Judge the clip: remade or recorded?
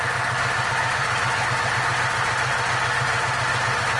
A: recorded